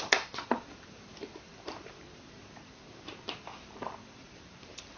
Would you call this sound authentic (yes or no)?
no